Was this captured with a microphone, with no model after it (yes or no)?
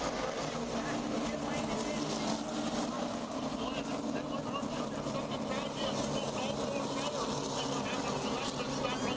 yes